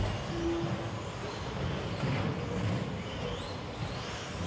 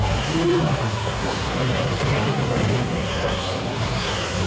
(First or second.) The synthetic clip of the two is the second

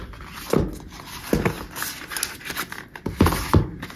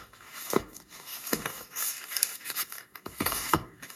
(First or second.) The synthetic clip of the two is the second